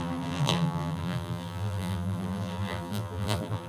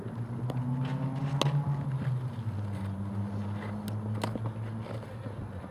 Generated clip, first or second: first